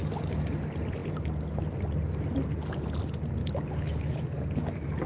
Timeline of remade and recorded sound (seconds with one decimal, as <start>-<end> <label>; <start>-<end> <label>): 0.0-0.5 remade; 0.5-3.4 recorded; 3.4-5.1 remade